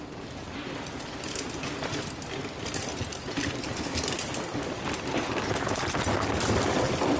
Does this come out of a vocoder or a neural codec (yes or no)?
no